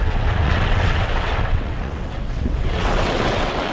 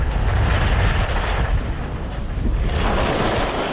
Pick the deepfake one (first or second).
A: first